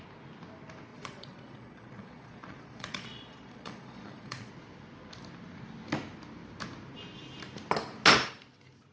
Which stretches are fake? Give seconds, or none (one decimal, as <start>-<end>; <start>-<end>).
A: 0.9-4.5